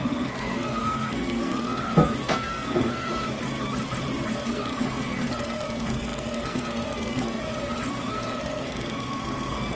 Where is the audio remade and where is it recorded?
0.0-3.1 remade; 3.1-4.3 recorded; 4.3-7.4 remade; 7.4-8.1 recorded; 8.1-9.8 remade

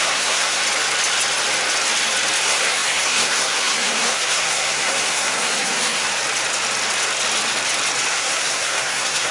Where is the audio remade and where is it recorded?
0.0-0.6 remade; 0.6-2.4 recorded; 2.4-6.1 remade; 6.1-8.1 recorded; 8.1-9.3 remade

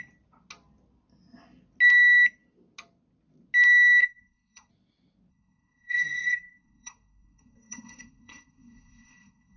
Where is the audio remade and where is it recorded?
0.0-4.0 recorded; 4.0-4.7 remade; 4.7-5.3 recorded; 5.3-9.6 remade